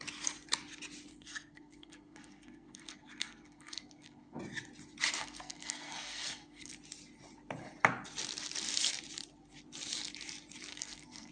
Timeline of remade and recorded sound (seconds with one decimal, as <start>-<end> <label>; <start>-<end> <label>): 0.0-1.1 recorded; 1.1-4.4 remade; 4.4-5.2 recorded; 5.2-6.7 remade; 6.7-10.7 recorded; 10.7-11.3 remade